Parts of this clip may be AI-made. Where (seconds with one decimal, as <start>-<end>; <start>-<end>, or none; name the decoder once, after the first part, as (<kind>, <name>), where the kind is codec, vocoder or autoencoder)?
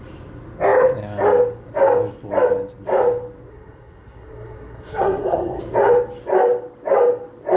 3.5-5.6 (codec, SNAC)